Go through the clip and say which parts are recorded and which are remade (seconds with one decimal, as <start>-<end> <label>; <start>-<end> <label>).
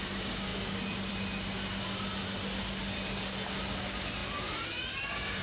0.0-5.4 recorded